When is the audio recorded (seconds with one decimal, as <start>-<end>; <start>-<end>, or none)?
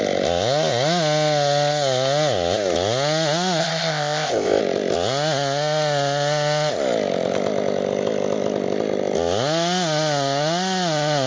0.0-3.6; 4.6-11.3